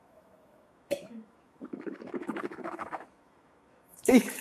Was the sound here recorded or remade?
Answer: remade